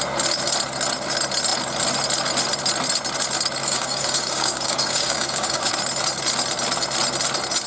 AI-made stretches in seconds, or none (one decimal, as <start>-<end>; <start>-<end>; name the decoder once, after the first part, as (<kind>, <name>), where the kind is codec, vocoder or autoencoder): 3.6-5.7 (codec, DAC)